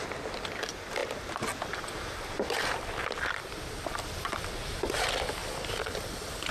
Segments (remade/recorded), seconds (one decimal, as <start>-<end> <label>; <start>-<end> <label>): 0.0-5.4 recorded; 5.4-6.5 remade